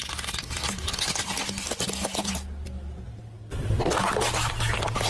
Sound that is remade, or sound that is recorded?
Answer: recorded